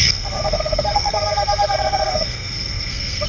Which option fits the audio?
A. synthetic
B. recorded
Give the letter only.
A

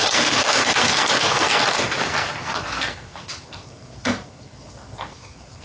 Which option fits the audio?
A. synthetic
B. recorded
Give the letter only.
A